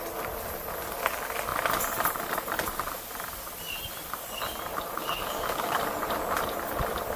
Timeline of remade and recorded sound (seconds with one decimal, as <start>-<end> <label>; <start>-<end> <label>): 0.0-5.0 recorded; 5.0-5.8 remade; 5.8-7.2 recorded